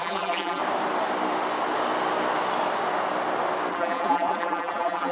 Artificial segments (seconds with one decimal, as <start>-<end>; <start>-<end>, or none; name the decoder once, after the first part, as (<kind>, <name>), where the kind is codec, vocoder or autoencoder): 0.0-0.6 (vocoder, BigVGAN v2); 3.7-5.1